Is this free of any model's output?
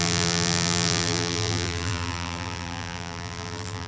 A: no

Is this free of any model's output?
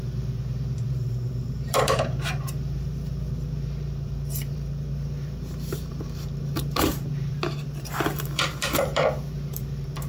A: no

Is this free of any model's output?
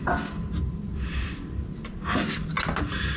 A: yes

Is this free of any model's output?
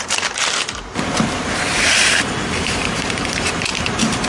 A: no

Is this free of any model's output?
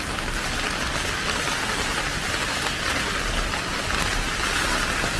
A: yes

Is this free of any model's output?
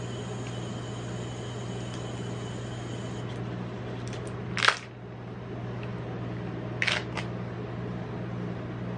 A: yes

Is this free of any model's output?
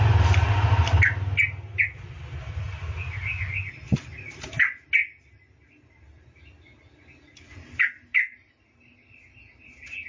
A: yes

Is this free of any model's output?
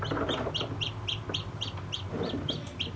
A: yes